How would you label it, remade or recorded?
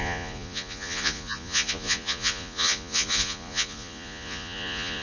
remade